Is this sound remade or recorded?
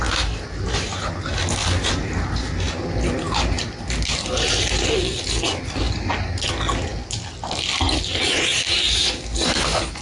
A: recorded